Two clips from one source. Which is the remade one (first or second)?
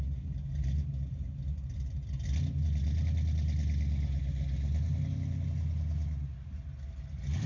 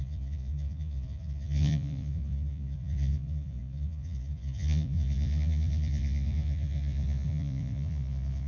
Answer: second